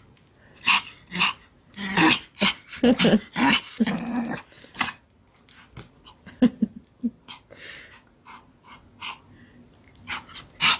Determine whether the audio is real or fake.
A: real